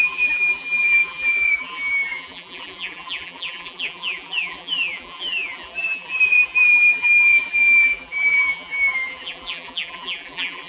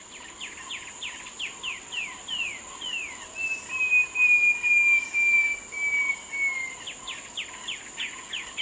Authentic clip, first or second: second